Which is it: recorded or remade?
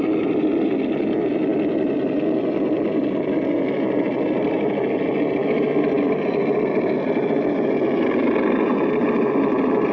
recorded